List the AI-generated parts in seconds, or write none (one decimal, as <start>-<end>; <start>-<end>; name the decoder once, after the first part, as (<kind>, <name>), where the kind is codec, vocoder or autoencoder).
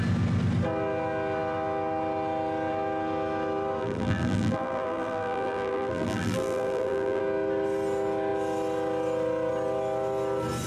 3.8-7.2 (vocoder, BigVGAN v2)